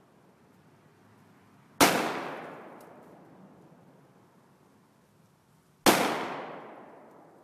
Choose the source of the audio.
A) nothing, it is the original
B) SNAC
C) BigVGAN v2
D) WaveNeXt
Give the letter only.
A